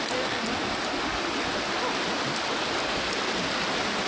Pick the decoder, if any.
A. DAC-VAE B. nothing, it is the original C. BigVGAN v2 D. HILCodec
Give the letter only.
B